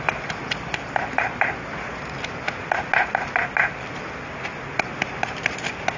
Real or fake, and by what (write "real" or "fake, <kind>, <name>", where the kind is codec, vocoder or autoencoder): real